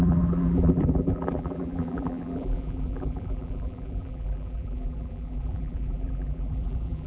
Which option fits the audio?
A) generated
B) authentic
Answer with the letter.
A